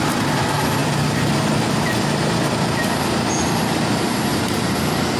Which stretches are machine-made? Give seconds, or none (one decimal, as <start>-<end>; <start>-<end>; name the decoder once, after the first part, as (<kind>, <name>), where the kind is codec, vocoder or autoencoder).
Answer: none